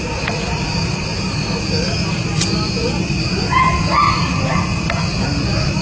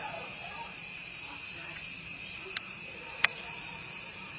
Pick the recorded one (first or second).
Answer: first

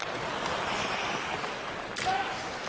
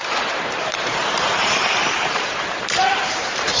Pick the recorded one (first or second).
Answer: first